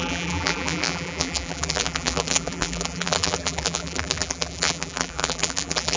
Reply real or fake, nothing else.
fake